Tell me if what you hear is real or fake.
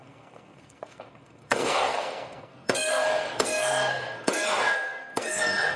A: fake